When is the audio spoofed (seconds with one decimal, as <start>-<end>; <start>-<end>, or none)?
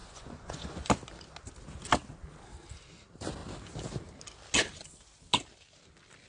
0.0-0.9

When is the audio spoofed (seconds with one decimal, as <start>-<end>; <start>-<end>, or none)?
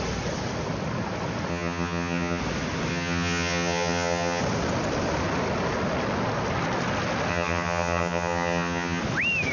1.5-2.4; 2.9-4.4; 7.3-9.0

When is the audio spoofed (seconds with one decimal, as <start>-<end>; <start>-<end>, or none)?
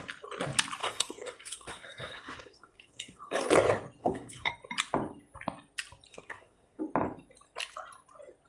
0.8-3.5; 4.0-4.5; 6.1-6.8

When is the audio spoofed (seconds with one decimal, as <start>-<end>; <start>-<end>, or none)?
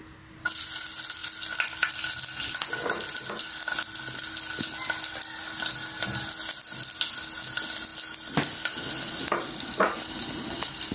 none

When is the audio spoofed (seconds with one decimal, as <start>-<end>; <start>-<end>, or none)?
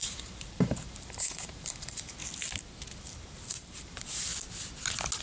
0.0-2.2; 3.0-4.3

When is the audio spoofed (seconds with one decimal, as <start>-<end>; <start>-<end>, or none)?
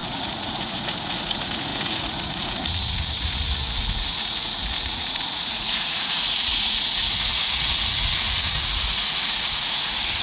0.0-10.2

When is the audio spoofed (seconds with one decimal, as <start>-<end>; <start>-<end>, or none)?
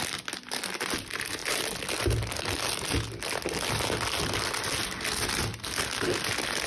none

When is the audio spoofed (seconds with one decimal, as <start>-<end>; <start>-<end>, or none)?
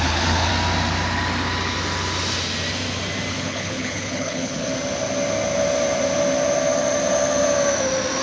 0.0-0.5; 3.3-4.7